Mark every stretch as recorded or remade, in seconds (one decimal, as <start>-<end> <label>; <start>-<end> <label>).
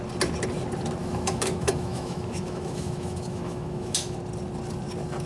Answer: 0.0-1.0 recorded; 1.0-4.2 remade; 4.2-5.3 recorded